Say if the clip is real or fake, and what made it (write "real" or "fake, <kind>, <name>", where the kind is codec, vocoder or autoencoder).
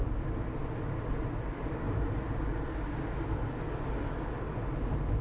real